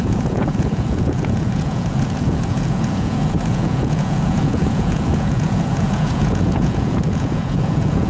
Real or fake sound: fake